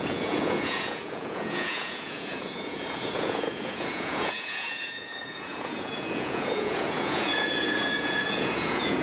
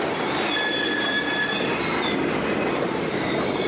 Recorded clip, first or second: second